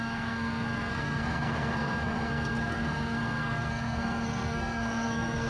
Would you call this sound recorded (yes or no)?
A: no